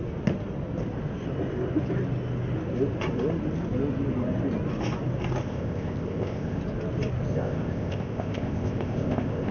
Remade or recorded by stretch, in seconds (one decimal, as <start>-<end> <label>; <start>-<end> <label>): 0.0-5.4 recorded; 5.4-6.6 remade; 6.6-7.3 recorded; 7.3-9.5 remade